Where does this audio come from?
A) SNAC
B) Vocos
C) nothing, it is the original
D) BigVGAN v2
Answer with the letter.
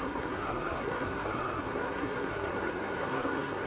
A